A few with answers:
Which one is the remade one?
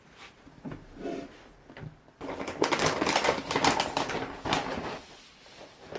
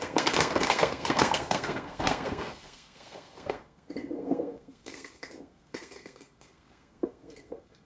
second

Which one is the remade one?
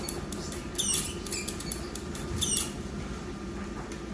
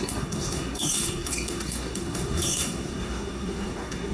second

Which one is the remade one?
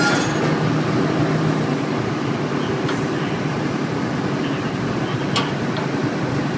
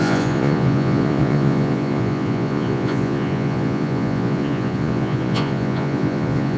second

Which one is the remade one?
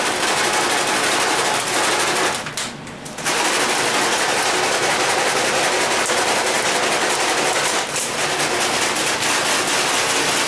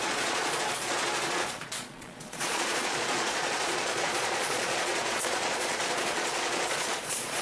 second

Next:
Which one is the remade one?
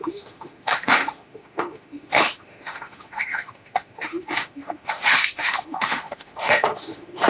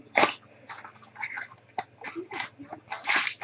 first